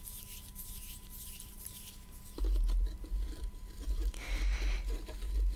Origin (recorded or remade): remade